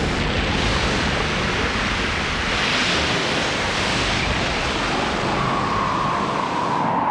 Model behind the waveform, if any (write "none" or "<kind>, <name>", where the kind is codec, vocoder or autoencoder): none